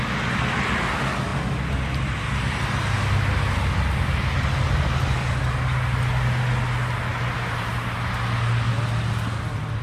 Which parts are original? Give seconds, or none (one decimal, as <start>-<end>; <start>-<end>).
0.0-7.1; 7.7-9.8